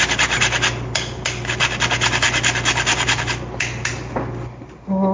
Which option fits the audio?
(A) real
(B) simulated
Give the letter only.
A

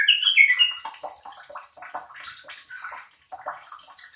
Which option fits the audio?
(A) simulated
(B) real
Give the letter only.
B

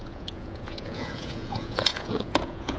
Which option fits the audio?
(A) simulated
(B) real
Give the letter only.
A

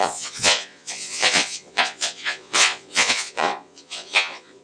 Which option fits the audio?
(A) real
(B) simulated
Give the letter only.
B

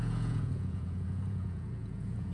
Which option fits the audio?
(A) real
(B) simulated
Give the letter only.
B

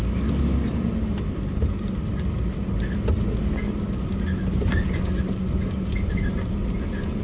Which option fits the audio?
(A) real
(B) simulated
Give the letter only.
A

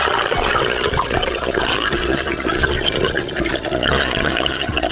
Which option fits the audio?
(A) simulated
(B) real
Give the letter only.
A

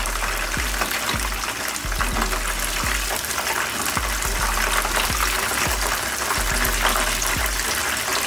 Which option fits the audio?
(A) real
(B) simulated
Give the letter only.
A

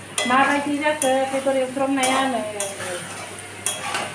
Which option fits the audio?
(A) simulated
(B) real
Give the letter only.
B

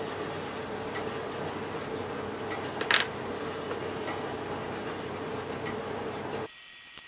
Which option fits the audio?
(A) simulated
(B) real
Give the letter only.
B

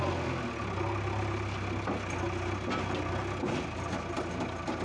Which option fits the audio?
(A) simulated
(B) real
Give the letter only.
B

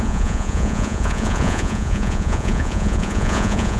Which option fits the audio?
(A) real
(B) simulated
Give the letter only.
B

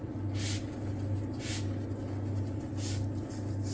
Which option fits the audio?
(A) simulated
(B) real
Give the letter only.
B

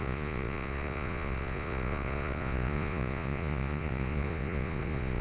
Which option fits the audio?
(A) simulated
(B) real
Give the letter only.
A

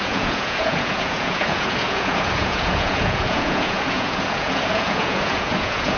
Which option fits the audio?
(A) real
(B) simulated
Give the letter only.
B